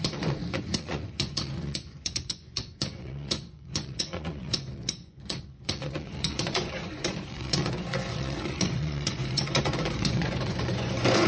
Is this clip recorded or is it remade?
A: remade